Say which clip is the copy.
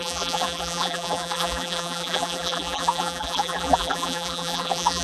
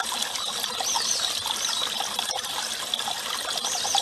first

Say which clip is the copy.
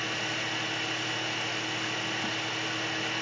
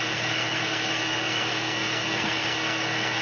second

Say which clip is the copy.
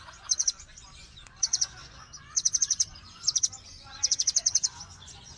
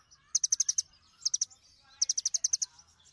first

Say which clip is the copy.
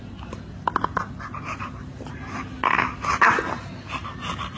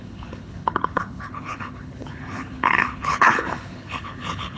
second